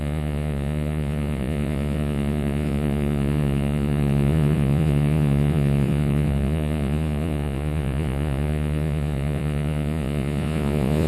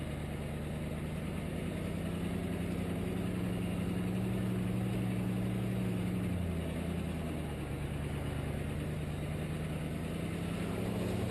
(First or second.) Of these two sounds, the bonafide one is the second